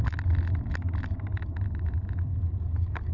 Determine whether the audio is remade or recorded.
recorded